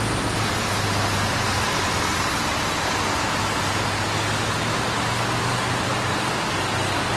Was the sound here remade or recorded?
recorded